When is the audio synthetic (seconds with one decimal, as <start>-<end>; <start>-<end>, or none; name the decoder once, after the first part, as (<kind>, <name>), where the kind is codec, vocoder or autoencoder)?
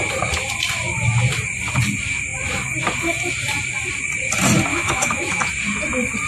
4.7-5.4 (autoencoder, DAC-VAE)